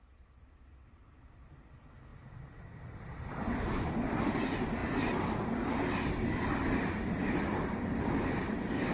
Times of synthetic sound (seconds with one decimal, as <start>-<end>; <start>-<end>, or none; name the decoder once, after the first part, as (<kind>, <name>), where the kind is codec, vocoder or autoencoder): none